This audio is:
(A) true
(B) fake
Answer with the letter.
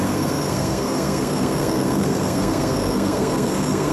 B